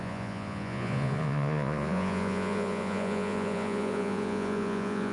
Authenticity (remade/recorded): remade